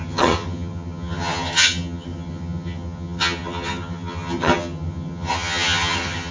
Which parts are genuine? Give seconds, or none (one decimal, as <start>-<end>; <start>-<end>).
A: none